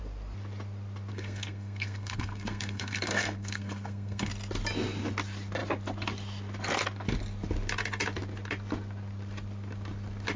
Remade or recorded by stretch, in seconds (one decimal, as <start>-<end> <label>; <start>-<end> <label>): 0.0-1.1 recorded; 1.1-4.3 remade; 4.3-10.4 recorded